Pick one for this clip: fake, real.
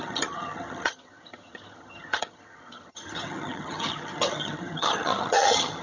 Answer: fake